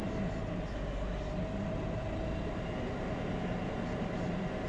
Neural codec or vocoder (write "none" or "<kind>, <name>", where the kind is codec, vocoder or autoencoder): none